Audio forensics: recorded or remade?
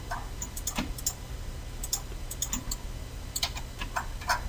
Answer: recorded